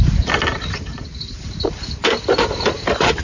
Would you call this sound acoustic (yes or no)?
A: no